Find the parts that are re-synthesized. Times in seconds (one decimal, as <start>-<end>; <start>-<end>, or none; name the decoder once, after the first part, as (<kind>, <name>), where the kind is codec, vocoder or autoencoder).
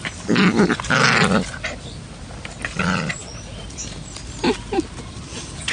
none